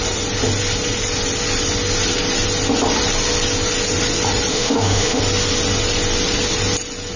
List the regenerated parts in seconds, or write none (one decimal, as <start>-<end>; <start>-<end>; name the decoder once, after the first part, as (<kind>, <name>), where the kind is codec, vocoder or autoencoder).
4.5-5.2 (autoencoder, DAC-VAE)